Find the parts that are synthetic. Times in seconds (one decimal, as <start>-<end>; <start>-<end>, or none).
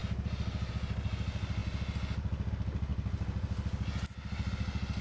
none